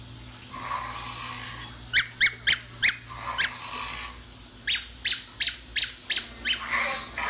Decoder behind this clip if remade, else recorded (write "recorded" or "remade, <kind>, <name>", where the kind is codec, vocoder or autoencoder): recorded